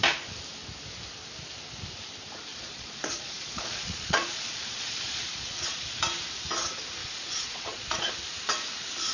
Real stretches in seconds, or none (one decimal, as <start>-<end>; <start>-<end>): 0.0-2.5; 6.0-7.0; 8.1-9.1